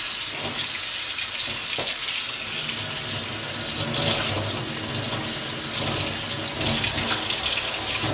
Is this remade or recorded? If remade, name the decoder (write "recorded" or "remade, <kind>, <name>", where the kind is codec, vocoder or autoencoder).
recorded